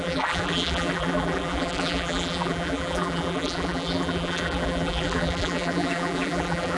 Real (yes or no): no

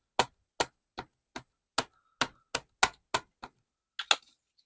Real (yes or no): yes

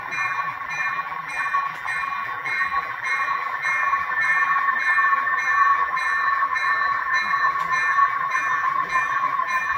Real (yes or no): no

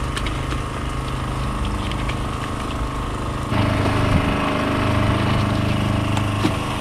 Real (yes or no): yes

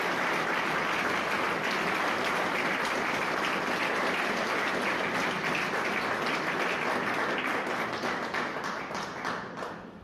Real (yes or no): yes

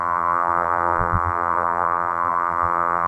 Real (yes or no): no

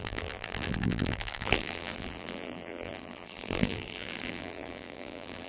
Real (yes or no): no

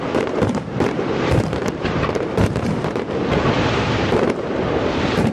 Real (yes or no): no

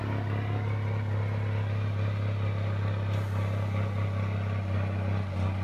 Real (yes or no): yes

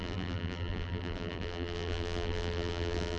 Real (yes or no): no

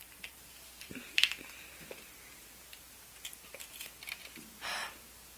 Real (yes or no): no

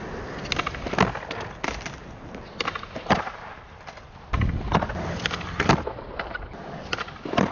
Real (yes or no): yes